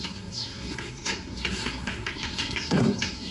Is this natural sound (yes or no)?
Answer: no